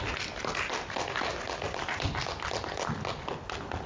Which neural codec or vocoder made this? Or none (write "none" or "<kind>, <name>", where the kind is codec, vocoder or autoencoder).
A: none